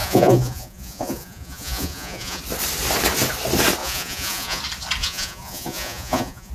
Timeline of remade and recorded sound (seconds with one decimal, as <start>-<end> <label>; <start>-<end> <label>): 0.0-2.4 remade; 2.4-3.8 recorded; 3.8-4.6 remade; 4.6-5.0 recorded; 5.0-6.5 remade